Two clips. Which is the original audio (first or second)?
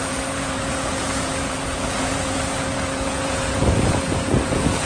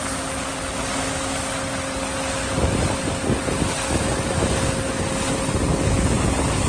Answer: second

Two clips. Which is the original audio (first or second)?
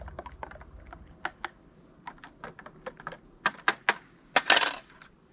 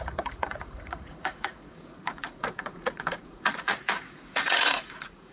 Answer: first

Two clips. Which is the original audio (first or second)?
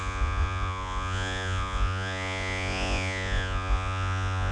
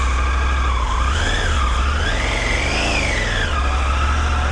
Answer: second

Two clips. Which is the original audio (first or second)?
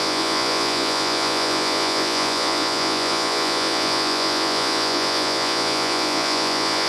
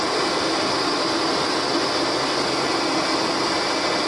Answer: second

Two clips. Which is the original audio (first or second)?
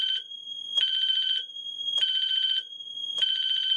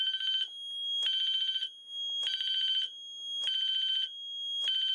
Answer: second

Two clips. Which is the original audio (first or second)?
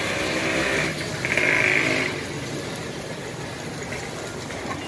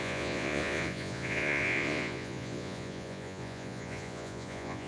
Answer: first